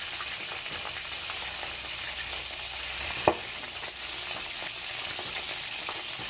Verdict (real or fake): real